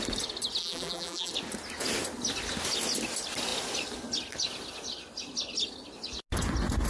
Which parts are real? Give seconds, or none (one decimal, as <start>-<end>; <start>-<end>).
0.0-0.6; 1.3-6.9